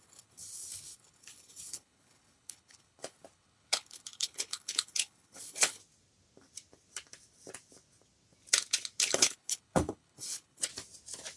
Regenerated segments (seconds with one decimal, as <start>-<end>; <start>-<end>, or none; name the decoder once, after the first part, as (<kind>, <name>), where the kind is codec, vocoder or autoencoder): 0.0-5.8 (codec, HILCodec); 9.1-10.7